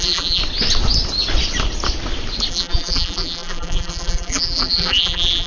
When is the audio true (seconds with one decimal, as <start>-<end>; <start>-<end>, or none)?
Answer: 0.4-2.5